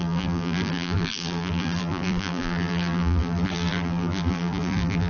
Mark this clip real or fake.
fake